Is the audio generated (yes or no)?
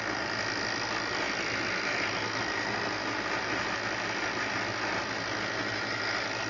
no